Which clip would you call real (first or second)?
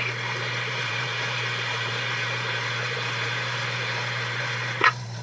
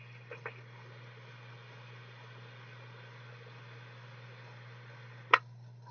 second